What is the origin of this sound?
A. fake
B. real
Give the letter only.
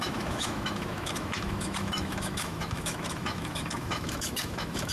A